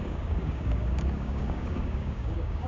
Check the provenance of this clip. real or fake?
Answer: fake